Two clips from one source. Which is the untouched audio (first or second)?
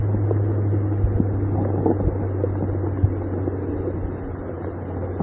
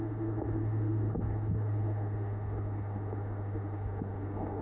first